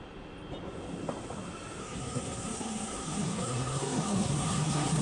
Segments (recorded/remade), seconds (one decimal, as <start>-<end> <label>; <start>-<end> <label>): 0.0-1.8 recorded; 1.8-5.0 remade